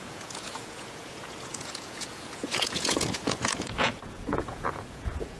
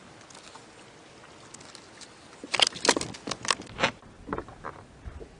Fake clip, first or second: first